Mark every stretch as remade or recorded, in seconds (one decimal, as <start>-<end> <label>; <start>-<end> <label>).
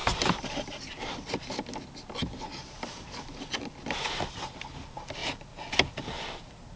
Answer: 0.0-1.1 remade; 1.1-2.2 recorded; 2.2-3.7 remade; 3.7-5.2 recorded; 5.2-6.8 remade